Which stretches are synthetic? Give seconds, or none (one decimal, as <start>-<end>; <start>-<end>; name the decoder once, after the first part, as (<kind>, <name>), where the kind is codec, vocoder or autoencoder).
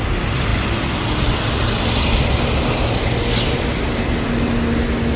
none